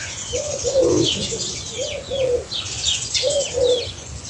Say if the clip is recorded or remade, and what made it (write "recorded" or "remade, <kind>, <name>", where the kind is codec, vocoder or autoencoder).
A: remade, vocoder, Vocos